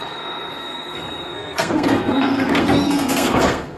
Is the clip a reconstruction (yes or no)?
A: yes